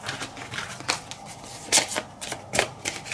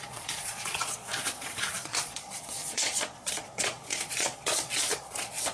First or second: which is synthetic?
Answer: second